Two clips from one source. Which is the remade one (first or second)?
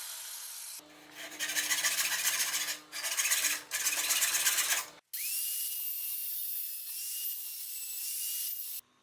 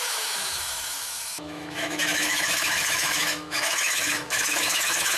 second